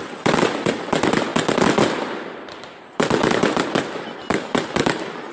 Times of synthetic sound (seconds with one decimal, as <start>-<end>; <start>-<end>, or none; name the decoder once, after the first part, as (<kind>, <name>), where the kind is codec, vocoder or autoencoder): none

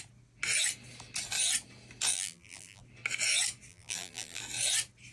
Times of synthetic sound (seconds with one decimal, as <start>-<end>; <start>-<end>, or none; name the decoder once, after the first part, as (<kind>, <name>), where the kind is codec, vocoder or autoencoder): 2.1-2.8 (vocoder, BigVGAN v2); 3.7-4.4

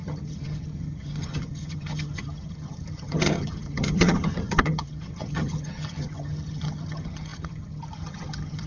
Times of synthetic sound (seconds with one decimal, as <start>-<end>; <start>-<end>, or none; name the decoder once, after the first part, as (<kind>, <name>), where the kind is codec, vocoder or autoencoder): 0.0-8.7 (vocoder, HiFi-GAN)

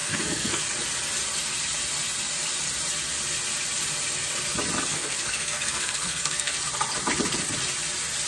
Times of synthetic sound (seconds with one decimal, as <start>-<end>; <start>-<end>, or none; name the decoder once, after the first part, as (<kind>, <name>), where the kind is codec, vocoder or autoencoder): 0.0-0.6 (codec, SNAC); 4.9-6.6

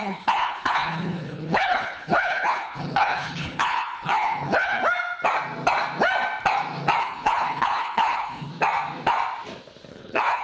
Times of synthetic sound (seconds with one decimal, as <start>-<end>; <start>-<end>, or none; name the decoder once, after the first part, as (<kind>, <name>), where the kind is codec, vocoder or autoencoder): 0.0-4.8 (codec, HILCodec); 7.0-8.5; 9.9-10.4

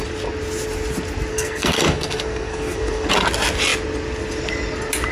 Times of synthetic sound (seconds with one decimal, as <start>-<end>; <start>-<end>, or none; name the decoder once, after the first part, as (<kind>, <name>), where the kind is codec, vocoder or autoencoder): 1.3-3.1 (codec, SNAC)